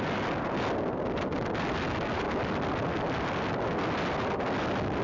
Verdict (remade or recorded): recorded